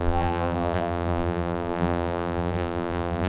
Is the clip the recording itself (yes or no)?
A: no